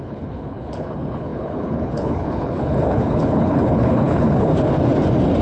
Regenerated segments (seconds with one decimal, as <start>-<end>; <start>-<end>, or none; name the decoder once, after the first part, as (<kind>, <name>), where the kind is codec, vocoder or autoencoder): 0.0-4.5 (codec, HILCodec)